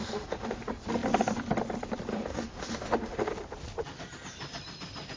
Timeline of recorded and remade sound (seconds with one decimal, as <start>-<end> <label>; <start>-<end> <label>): 0.0-0.6 remade; 0.6-2.1 recorded; 2.1-3.3 remade; 3.3-5.2 recorded